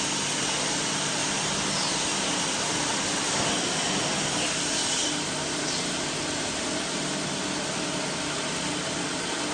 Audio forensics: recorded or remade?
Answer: recorded